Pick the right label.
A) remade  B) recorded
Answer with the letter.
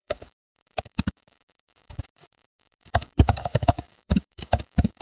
A